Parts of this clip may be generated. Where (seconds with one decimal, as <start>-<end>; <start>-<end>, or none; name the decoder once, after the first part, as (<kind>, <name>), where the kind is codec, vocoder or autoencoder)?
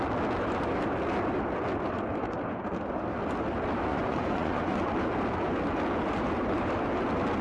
3.9-4.9 (vocoder, Vocos)